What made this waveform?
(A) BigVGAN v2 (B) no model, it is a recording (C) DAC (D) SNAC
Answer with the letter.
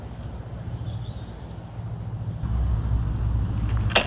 B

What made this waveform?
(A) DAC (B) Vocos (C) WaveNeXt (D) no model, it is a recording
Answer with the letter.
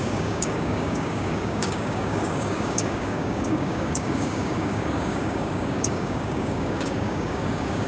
A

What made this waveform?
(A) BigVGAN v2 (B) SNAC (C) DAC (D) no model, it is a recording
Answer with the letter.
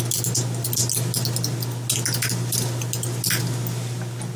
D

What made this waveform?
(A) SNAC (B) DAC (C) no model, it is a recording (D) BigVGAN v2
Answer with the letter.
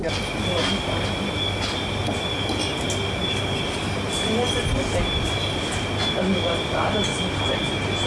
C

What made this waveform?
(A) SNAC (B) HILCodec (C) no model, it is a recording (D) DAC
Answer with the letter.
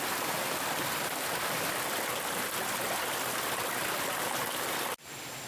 C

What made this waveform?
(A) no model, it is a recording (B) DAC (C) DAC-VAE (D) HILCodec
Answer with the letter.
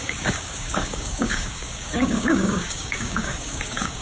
B